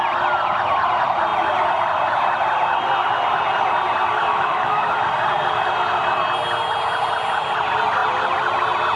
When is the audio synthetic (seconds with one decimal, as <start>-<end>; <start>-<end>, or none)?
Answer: 4.3-4.9